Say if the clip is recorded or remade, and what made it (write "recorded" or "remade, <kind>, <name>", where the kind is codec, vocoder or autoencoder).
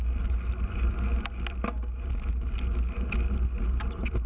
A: recorded